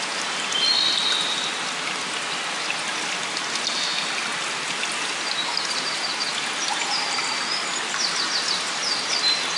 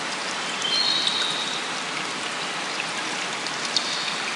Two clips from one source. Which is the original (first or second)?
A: first